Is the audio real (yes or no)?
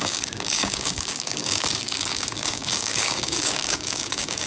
no